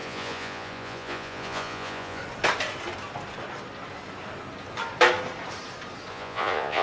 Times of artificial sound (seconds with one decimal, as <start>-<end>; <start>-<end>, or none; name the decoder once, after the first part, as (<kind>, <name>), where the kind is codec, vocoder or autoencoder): 0.0-2.2 (vocoder, Vocos); 6.1-6.8